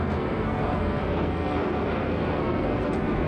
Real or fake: fake